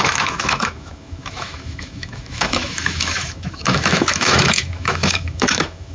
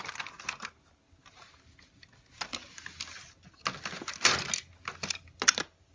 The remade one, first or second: first